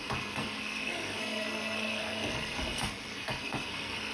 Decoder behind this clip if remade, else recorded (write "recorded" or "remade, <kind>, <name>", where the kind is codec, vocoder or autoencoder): remade, codec, SNAC